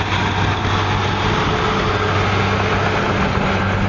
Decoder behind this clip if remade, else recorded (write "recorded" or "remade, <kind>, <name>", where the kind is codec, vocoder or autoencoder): recorded